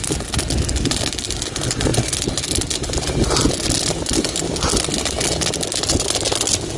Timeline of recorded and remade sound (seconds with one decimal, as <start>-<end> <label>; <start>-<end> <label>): 0.0-6.8 recorded